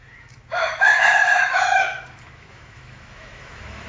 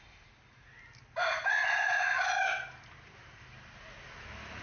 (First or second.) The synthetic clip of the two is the first